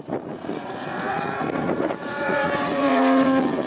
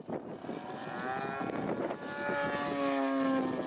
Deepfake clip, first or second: first